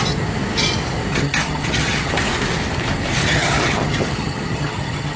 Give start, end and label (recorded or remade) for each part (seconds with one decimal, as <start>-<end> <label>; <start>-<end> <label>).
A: 0.0-1.1 recorded; 1.1-2.1 remade; 2.1-3.2 recorded; 3.2-5.2 remade